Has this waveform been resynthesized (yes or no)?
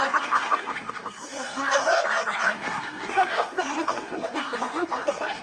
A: yes